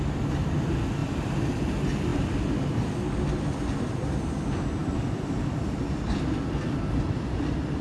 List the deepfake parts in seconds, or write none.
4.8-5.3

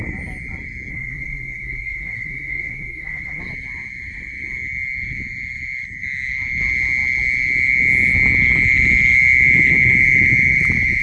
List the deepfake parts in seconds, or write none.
0.9-3.4

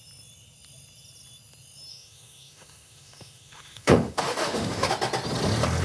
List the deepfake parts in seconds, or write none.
1.9-4.9

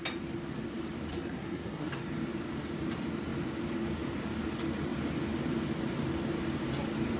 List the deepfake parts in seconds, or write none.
1.1-1.9

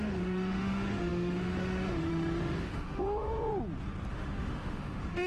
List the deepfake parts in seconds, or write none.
0.0-3.5; 4.1-5.3